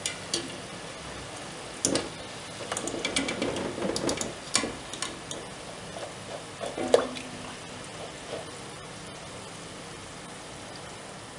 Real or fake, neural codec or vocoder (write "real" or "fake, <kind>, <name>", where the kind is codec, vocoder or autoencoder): real